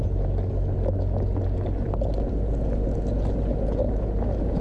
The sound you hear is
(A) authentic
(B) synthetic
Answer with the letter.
A